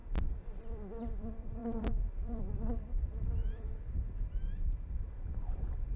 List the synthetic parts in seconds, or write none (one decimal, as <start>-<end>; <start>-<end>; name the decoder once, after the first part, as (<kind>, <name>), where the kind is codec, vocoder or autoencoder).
0.6-6.0 (vocoder, BigVGAN v2)